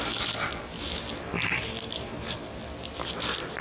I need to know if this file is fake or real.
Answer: real